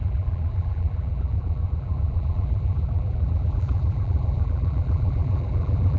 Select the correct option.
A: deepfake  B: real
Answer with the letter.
A